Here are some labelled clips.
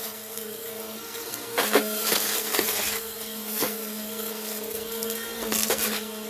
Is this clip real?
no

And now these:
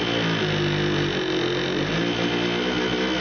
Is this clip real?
yes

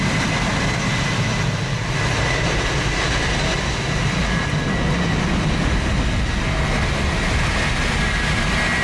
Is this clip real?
yes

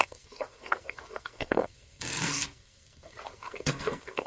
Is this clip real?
no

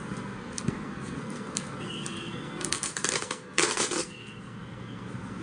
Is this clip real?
no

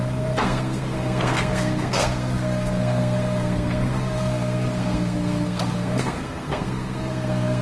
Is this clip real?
no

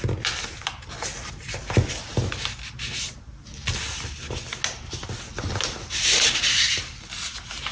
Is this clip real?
yes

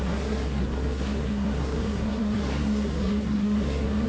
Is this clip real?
no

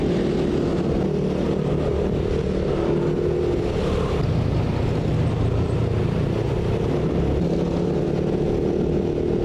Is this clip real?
yes